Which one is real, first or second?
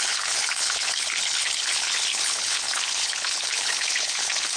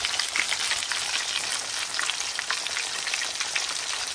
second